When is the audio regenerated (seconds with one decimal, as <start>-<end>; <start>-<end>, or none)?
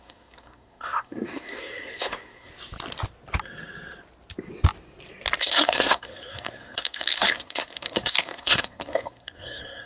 0.0-2.5; 5.4-9.9